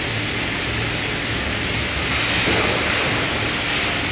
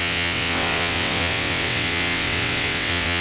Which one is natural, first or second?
first